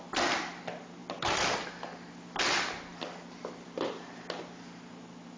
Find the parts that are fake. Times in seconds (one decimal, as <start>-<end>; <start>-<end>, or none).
none